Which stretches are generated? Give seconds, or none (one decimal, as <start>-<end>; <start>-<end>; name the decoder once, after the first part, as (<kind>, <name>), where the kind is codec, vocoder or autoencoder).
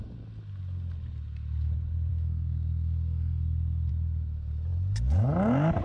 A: 2.1-3.9 (codec, SNAC)